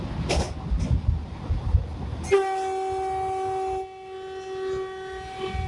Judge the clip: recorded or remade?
recorded